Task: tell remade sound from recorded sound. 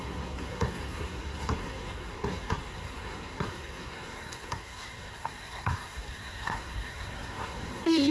remade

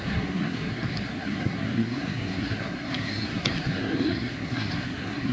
remade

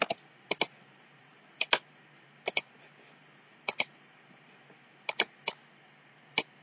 recorded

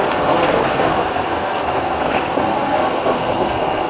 remade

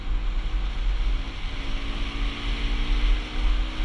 recorded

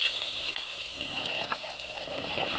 remade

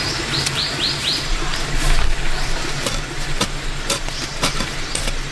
recorded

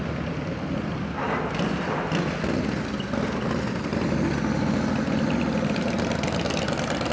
recorded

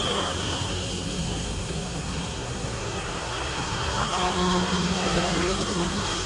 remade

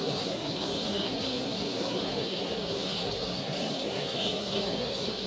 remade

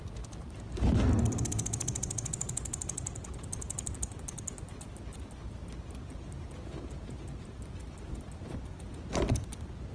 recorded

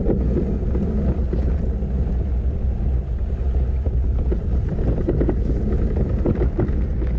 recorded